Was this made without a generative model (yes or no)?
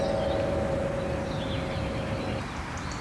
yes